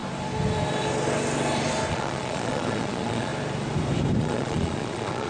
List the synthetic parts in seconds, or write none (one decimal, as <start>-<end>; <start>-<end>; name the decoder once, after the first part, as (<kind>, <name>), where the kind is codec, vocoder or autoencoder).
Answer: 1.9-3.3 (vocoder, Vocos); 4.2-5.3